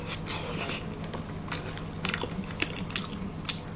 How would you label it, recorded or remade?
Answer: recorded